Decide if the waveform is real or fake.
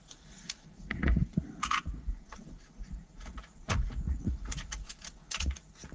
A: fake